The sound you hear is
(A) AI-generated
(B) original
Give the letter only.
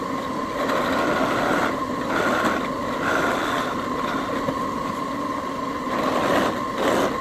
B